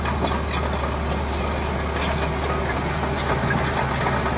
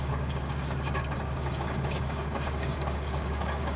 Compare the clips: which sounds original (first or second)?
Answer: first